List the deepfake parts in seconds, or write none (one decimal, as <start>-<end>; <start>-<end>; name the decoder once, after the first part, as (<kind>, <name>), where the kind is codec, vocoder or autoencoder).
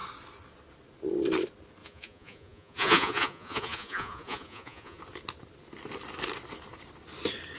1.8-5.0 (vocoder, Vocos)